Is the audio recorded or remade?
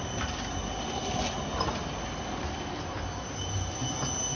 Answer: recorded